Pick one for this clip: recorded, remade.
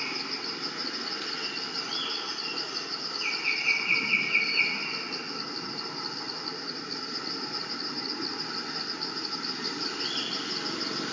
recorded